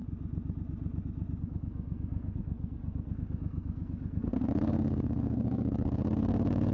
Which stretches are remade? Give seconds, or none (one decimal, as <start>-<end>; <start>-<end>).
1.4-6.7